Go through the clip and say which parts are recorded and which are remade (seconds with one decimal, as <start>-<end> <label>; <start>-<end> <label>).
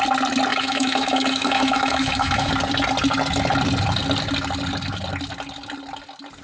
0.0-0.5 recorded; 0.5-2.5 remade; 2.5-6.4 recorded